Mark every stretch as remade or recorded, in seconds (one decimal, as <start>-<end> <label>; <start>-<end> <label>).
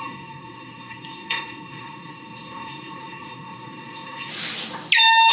0.0-4.3 remade; 4.3-5.3 recorded